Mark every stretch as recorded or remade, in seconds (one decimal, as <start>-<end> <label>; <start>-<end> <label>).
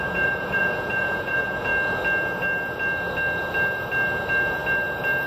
0.0-1.7 remade; 1.7-5.3 recorded